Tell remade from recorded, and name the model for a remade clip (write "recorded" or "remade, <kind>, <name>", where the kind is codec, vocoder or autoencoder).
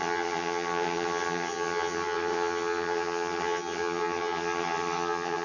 remade, vocoder, HiFi-GAN